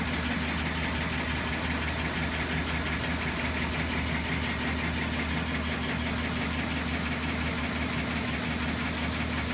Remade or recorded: recorded